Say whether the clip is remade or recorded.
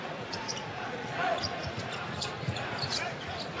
remade